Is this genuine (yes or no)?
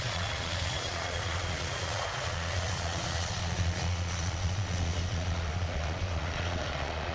no